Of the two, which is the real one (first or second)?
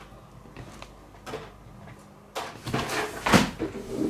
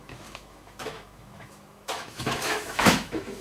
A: first